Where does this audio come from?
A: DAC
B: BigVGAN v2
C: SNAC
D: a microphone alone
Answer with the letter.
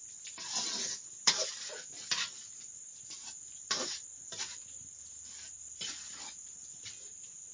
D